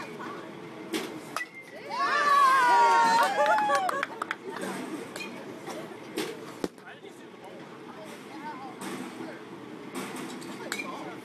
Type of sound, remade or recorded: recorded